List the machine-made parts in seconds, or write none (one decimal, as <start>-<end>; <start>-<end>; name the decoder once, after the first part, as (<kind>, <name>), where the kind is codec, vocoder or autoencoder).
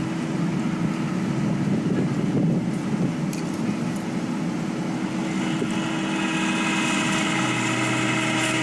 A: none